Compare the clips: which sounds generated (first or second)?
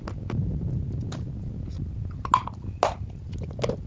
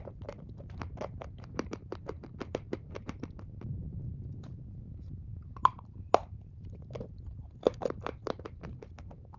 second